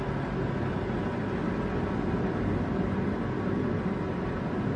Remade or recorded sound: recorded